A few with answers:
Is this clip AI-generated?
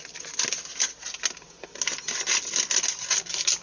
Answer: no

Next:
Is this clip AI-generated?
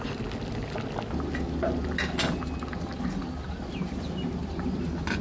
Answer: no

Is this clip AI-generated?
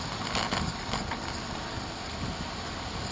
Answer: no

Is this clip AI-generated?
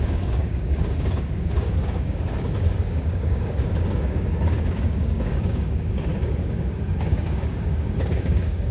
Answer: yes